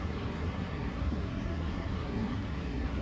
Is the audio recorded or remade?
remade